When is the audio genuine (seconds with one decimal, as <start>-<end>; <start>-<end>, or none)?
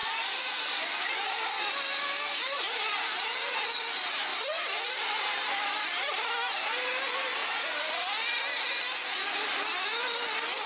1.4-4.3; 5.6-7.4; 7.9-10.7